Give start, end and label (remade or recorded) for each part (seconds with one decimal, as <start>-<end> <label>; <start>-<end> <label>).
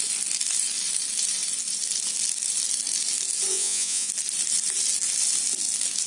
0.0-3.5 recorded; 3.5-4.1 remade; 4.1-6.1 recorded